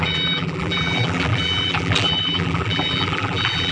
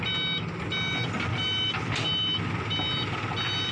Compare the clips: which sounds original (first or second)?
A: second